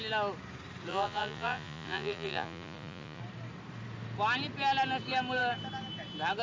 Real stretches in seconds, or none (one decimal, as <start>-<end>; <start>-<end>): 0.0-0.9; 3.2-6.4